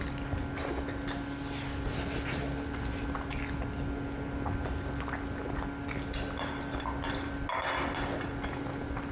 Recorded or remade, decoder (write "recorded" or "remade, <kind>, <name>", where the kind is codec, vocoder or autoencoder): recorded